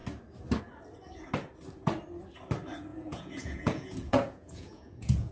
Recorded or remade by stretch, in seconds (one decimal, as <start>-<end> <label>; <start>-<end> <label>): 0.0-2.9 recorded; 2.9-5.3 remade

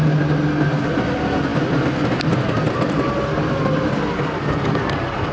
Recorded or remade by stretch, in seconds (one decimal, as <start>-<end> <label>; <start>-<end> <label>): 0.0-5.3 recorded

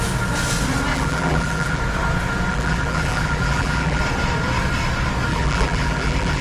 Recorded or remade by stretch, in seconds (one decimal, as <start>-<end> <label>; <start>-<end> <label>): 0.0-0.9 recorded; 0.9-1.8 remade; 1.8-2.5 recorded; 2.5-4.0 remade; 4.0-5.3 recorded; 5.3-6.4 remade

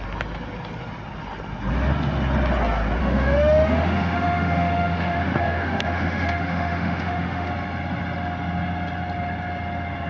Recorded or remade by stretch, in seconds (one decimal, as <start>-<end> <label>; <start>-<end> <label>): 0.0-3.0 recorded; 3.0-7.5 remade; 7.5-10.1 recorded

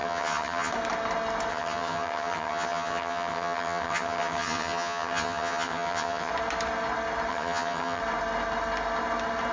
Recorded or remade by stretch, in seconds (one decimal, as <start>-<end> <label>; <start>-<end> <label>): 0.0-0.7 remade; 0.7-1.5 recorded; 1.5-6.3 remade; 6.3-7.3 recorded; 7.3-8.0 remade; 8.0-9.5 recorded